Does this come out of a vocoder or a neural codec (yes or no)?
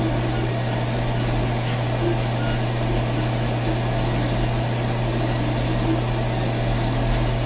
no